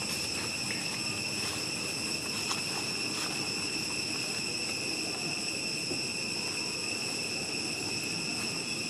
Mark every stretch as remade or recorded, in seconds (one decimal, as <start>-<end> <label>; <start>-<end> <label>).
0.0-8.9 recorded